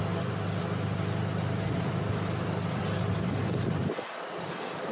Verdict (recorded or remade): recorded